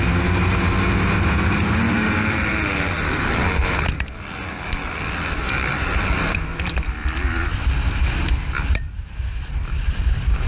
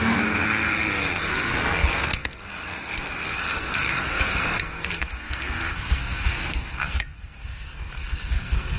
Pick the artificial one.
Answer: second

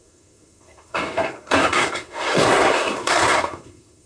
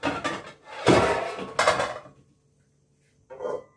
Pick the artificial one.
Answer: first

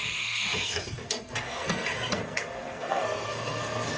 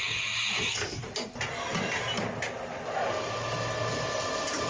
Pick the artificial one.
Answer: first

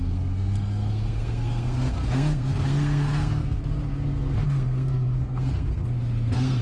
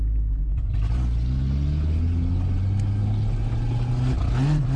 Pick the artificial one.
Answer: first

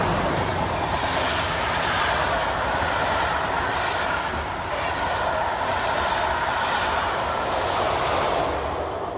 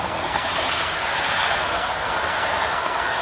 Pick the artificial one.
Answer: second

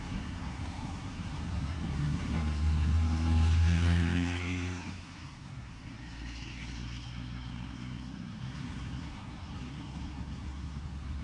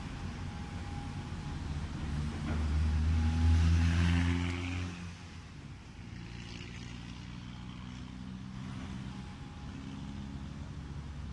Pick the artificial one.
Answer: first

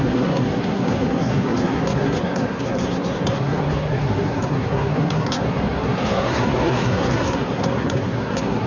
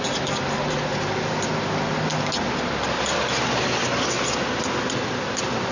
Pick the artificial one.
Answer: first